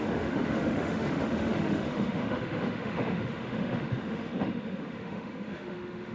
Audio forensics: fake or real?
fake